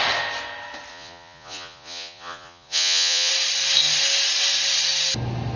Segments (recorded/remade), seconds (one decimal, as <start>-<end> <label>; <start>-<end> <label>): 0.0-0.9 recorded; 0.9-3.3 remade; 3.3-5.6 recorded